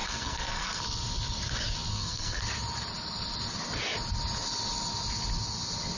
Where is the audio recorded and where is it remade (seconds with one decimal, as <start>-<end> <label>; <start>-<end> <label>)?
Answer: 0.0-0.8 remade; 0.8-1.9 recorded; 1.9-2.4 remade; 2.4-6.0 recorded